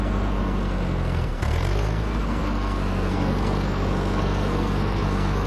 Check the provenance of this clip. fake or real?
fake